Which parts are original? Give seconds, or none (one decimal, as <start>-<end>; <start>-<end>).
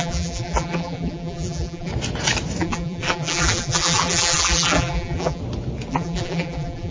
1.9-2.6; 5.4-5.9